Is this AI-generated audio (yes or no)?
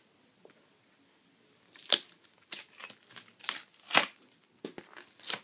no